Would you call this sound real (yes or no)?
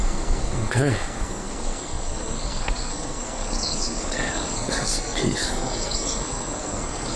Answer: no